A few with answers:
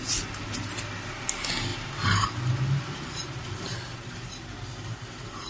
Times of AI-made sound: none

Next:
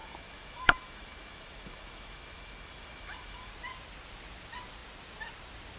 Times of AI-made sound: 0.0-3.5 (autoencoder, DAC-VAE)

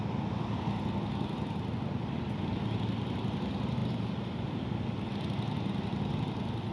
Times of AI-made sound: none